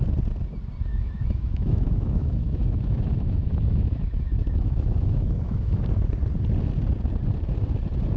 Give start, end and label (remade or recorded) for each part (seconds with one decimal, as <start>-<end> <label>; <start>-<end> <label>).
0.0-0.9 recorded; 0.9-5.8 remade; 5.8-8.2 recorded